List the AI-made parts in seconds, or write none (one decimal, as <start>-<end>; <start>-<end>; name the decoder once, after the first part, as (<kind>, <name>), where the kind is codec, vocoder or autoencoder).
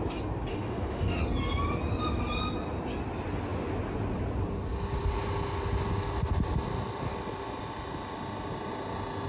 0.5-1.2 (autoencoder, DAC-VAE)